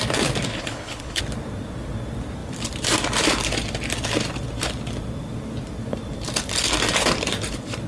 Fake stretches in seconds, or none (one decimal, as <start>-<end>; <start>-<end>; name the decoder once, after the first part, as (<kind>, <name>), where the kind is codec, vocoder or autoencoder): 0.5-1.2 (codec, HILCodec)

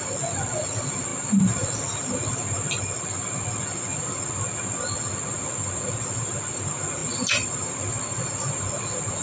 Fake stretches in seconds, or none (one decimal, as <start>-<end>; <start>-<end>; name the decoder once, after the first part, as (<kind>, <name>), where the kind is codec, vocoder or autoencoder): none

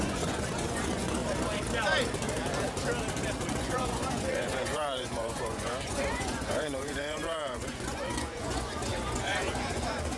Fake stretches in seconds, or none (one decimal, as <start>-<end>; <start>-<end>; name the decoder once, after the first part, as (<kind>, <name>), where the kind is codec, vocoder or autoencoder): 0.0-1.2 (vocoder, Vocos); 3.6-10.2

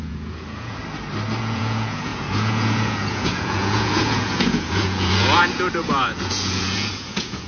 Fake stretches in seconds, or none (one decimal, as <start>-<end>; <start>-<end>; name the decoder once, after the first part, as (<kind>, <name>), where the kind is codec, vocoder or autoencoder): 0.0-0.8 (vocoder, Vocos); 1.4-7.5